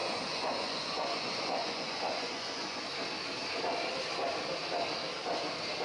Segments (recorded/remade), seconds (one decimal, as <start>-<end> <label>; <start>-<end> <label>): 0.0-2.8 remade; 2.8-5.8 recorded